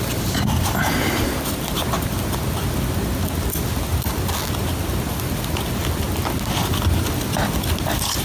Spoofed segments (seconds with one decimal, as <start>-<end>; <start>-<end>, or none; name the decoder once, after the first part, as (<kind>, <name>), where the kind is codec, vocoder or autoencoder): none